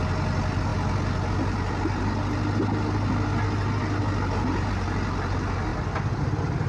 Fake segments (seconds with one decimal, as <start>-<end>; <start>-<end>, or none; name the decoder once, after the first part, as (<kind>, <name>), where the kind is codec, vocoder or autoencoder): none